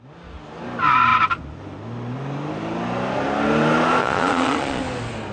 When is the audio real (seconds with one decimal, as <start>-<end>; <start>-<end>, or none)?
0.0-4.0; 4.8-5.3